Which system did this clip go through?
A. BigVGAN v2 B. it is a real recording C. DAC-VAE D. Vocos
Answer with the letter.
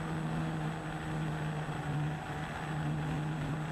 B